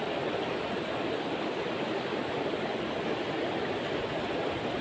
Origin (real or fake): real